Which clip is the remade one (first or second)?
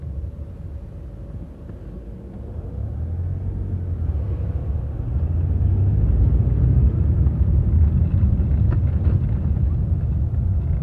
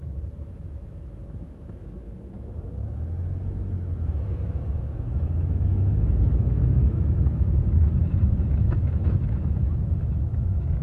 second